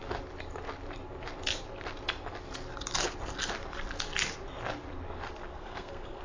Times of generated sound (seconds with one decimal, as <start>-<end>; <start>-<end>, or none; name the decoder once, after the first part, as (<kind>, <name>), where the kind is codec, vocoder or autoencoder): 5.5-6.2 (codec, SNAC)